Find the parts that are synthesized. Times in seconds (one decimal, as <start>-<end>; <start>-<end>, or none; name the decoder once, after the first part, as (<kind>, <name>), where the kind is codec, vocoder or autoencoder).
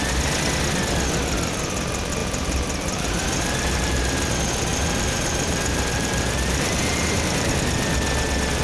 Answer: 2.2-4.3 (vocoder, BigVGAN v2); 4.7-7.5